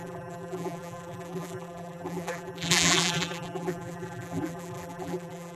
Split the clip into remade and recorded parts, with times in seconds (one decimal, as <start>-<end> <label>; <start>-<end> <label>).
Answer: 0.0-5.6 remade